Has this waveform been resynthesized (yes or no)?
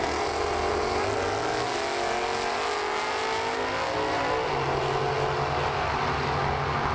no